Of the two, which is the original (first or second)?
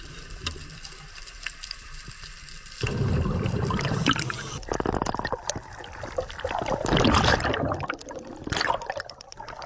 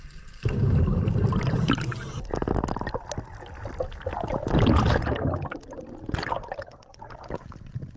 second